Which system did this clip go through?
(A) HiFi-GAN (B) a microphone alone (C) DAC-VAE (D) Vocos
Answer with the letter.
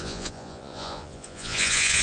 D